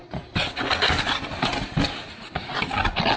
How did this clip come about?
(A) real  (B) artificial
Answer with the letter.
A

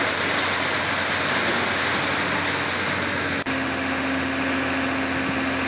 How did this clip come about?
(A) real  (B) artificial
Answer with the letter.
A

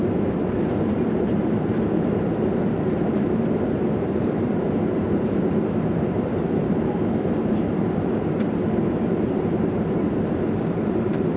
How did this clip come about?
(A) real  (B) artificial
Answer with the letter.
B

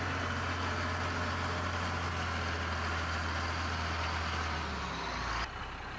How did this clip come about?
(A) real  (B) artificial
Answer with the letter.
A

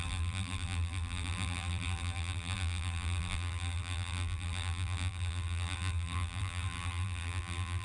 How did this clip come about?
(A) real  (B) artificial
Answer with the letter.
B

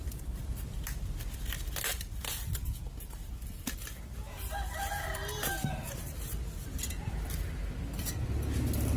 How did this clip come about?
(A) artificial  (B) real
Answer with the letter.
B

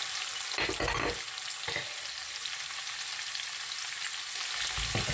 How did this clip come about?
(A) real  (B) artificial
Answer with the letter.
A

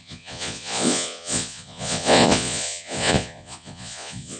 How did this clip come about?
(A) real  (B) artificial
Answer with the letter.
B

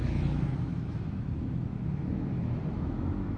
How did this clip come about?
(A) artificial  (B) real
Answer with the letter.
A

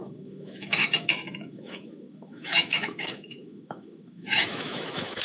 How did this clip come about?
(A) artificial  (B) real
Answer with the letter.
A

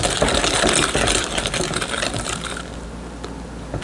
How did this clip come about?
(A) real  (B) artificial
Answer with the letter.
A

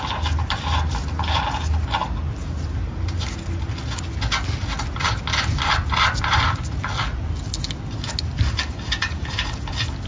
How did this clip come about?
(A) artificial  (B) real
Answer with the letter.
B